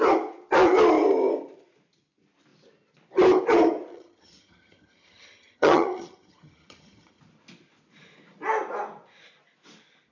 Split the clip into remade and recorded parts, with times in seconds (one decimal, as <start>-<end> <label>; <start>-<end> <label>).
0.0-3.9 recorded; 3.9-7.2 remade; 7.2-10.1 recorded